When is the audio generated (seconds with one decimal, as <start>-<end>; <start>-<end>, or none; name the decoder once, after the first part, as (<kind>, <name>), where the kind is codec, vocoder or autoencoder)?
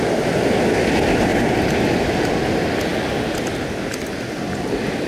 none